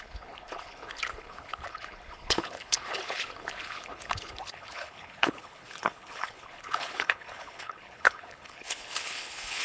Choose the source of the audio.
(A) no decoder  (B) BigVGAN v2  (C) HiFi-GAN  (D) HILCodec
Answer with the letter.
D